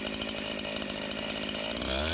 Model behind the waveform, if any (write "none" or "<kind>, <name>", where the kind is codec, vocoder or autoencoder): none